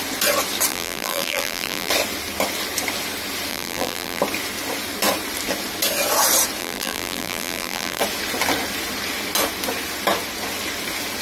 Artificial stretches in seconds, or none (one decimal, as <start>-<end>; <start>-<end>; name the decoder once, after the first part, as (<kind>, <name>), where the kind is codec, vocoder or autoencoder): 0.7-1.9 (vocoder, BigVGAN v2); 3.5-4.2; 6.6-8.0